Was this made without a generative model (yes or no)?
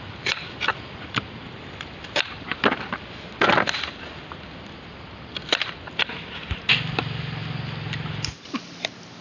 no